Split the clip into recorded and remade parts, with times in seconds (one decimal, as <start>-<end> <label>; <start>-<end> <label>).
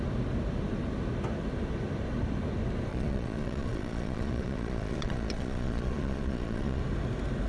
0.0-2.9 recorded; 2.9-6.8 remade; 6.8-7.5 recorded